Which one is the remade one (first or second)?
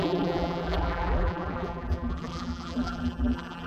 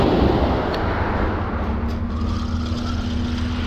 first